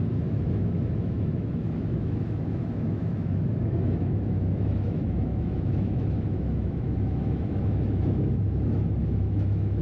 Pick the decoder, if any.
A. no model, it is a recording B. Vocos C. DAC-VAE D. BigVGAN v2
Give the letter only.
C